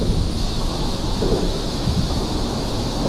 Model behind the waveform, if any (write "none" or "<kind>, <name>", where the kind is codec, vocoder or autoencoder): autoencoder, DAC-VAE